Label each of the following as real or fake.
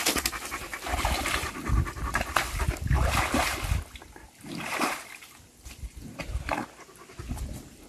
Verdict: real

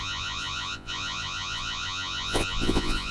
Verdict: fake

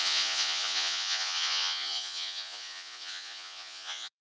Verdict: fake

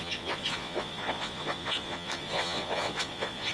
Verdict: fake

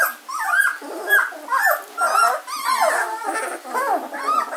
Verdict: real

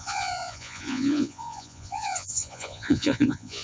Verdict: fake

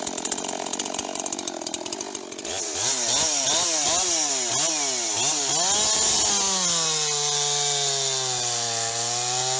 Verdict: real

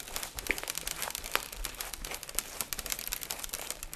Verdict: real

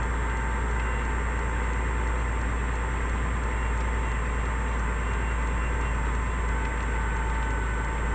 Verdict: real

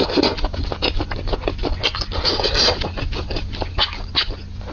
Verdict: real